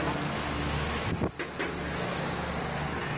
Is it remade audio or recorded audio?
recorded